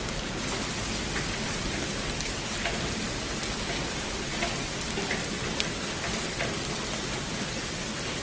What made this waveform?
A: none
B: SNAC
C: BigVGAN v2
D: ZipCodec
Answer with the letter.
A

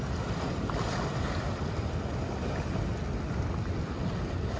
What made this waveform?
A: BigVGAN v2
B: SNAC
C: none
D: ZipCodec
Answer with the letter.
C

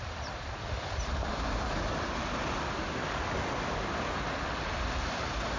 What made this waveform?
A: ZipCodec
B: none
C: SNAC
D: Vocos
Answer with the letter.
B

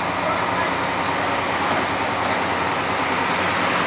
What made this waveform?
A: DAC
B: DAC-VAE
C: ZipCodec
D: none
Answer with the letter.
D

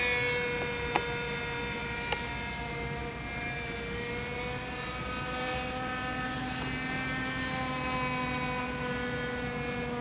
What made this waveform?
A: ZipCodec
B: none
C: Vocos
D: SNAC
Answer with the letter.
B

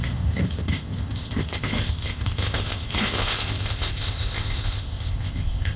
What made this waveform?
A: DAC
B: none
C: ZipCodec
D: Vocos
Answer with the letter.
C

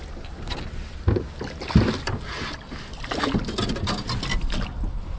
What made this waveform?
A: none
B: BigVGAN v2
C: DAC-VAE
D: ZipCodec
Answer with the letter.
A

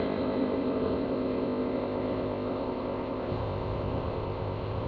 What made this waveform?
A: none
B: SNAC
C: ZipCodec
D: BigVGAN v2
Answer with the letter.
C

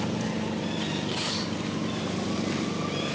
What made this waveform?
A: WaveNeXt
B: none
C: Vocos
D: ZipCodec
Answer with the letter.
B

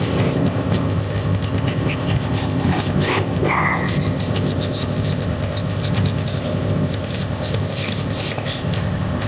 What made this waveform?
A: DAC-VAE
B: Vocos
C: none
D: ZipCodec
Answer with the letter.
D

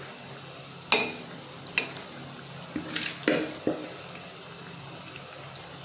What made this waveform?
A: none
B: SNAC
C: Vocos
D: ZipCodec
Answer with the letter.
A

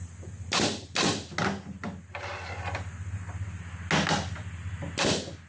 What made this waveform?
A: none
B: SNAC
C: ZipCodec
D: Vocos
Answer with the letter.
A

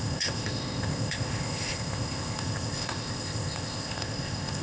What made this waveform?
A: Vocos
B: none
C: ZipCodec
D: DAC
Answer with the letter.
C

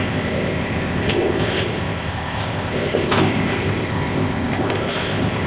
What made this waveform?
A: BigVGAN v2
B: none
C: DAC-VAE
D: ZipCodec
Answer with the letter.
D